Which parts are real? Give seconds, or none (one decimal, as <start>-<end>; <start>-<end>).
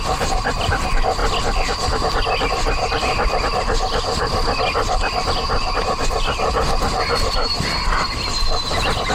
0.0-9.1